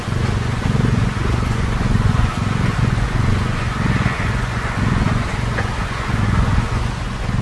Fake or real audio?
fake